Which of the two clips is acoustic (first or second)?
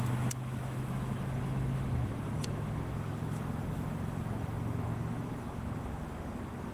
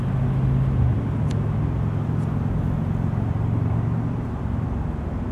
second